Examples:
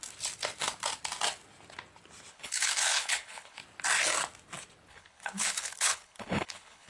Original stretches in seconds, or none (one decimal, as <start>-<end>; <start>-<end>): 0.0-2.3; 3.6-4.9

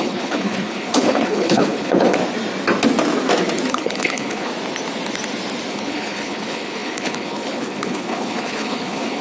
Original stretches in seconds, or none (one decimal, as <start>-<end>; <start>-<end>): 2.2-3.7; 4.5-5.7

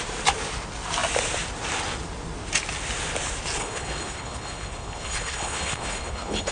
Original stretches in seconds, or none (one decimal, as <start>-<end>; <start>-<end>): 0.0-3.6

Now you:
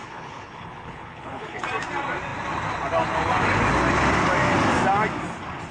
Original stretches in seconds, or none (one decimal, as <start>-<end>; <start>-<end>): 1.6-5.7